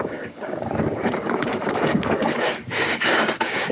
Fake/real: fake